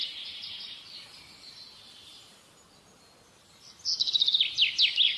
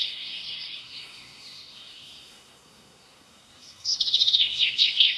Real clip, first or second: first